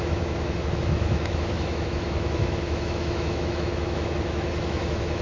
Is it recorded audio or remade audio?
remade